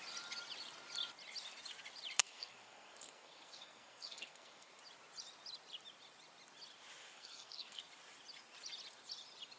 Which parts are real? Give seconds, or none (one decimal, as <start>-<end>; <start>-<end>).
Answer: 0.0-2.2; 4.7-7.0; 7.8-9.6